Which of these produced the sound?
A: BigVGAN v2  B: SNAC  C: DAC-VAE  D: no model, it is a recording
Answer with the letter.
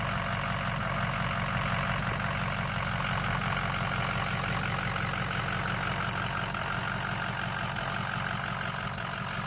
D